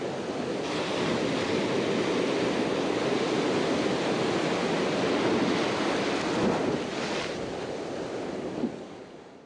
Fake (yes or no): no